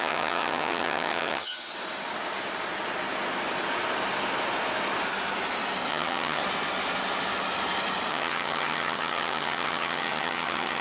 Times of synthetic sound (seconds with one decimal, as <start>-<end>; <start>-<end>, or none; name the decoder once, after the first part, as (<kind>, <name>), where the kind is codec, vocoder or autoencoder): 0.0-1.7 (vocoder, HiFi-GAN); 5.9-6.4; 8.1-10.8